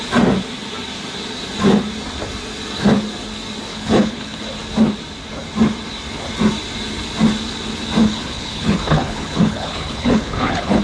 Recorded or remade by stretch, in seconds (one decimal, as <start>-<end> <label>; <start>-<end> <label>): 0.0-3.7 recorded; 3.7-4.4 remade; 4.4-8.0 recorded; 8.0-10.8 remade